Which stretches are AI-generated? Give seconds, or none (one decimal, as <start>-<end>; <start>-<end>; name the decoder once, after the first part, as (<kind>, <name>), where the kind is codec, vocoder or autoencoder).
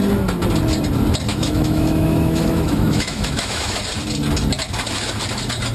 1.3-3.8 (autoencoder, DAC-VAE)